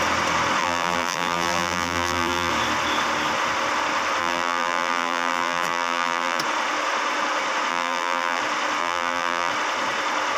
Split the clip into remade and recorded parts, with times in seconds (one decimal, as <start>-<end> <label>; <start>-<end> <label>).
0.0-0.6 recorded; 0.6-2.5 remade; 2.5-4.2 recorded; 4.2-6.4 remade; 6.4-7.7 recorded; 7.7-8.4 remade; 8.4-8.8 recorded; 8.8-9.5 remade; 9.5-10.4 recorded